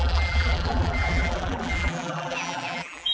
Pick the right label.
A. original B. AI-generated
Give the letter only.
B